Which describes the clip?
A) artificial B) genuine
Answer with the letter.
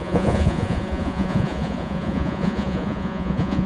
A